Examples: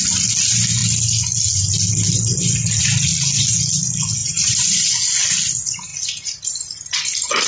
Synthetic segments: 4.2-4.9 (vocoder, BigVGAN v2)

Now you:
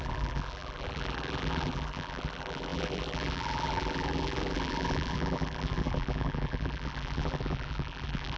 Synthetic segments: 0.0-8.4 (vocoder, BigVGAN v2)

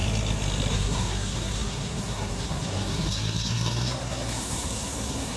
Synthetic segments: 0.7-5.4 (codec, SNAC)

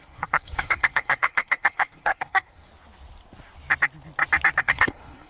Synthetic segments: 0.0-2.7 (codec, SNAC); 4.6-5.3